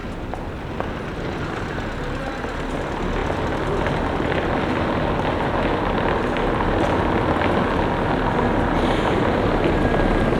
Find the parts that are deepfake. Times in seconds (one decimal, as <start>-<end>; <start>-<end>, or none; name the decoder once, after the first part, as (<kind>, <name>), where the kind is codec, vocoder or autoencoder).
none

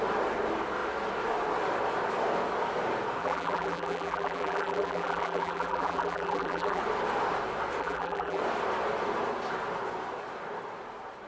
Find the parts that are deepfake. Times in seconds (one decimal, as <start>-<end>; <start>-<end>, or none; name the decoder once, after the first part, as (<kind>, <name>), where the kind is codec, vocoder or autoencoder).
3.2-6.8 (vocoder, BigVGAN v2); 7.8-8.4

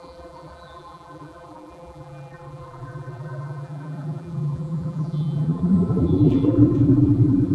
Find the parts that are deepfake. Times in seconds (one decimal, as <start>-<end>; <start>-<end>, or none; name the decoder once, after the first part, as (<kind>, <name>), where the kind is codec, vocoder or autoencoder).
0.0-7.5 (vocoder, BigVGAN v2)

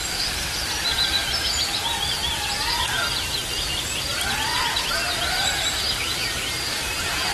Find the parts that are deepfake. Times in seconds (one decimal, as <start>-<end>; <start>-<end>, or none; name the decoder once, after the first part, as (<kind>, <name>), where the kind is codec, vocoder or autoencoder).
0.0-1.7 (vocoder, BigVGAN v2); 3.2-7.3